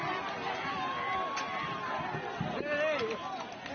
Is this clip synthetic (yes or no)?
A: no